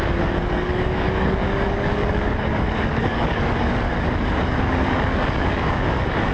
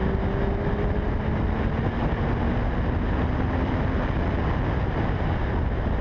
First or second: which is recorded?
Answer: second